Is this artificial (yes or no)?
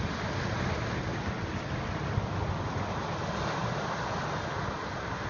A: no